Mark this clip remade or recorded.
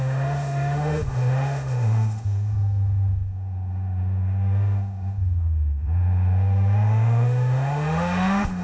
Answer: remade